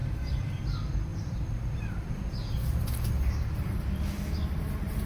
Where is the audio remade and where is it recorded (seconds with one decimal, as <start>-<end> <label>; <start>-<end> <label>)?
0.0-0.6 remade; 0.6-1.1 recorded; 1.1-3.7 remade; 3.7-5.1 recorded